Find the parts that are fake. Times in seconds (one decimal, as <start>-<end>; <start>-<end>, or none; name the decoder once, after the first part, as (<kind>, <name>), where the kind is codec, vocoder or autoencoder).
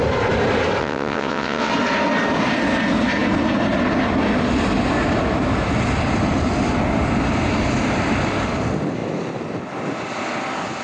0.8-1.7 (vocoder, WaveNeXt)